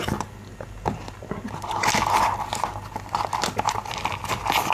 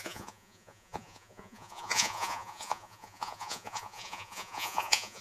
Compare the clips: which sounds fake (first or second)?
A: second